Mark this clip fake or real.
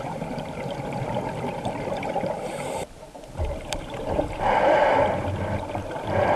fake